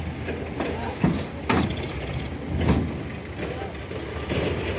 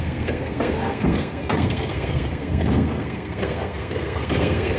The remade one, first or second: second